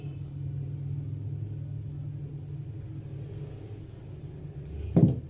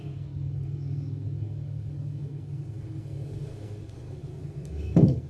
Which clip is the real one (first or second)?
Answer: first